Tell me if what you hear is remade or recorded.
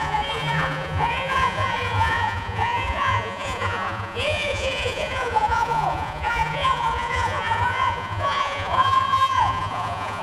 remade